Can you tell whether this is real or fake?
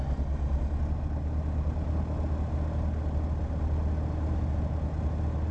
real